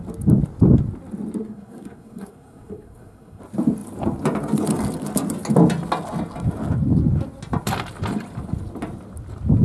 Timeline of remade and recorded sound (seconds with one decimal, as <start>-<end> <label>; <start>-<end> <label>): 0.0-1.4 recorded; 1.4-3.4 remade; 3.4-9.6 recorded